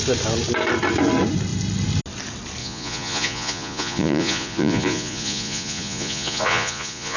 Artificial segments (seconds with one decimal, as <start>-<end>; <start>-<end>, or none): 2.6-7.2